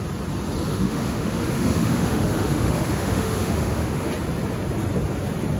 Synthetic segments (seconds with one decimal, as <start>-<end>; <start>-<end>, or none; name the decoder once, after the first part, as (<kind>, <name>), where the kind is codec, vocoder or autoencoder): 0.7-4.1 (autoencoder, DAC-VAE)